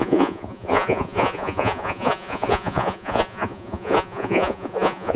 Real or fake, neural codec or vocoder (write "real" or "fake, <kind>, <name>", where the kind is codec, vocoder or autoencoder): fake, vocoder, Vocos